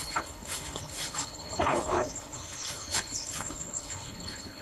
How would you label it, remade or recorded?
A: remade